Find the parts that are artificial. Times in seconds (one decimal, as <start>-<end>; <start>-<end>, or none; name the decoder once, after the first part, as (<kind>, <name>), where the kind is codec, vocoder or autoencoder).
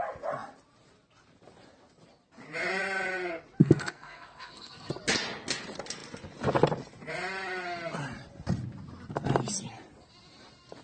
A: 3.6-4.9 (codec, SNAC)